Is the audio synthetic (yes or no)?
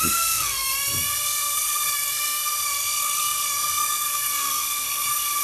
yes